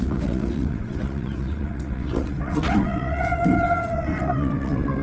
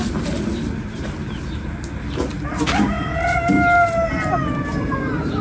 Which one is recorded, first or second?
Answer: second